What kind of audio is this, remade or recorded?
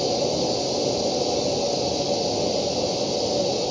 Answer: recorded